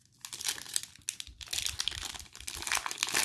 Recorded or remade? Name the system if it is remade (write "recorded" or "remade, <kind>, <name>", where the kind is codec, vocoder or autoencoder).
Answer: recorded